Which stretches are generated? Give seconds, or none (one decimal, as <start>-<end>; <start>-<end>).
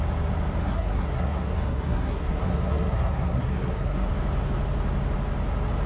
0.6-4.1